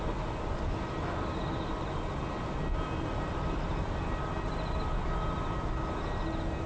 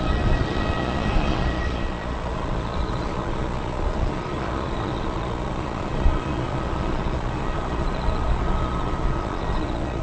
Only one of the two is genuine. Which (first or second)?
first